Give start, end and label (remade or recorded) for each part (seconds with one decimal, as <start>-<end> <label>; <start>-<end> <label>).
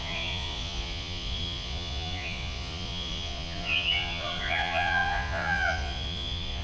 0.0-6.6 remade